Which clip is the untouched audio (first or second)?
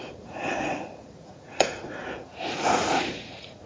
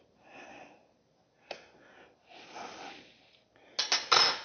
second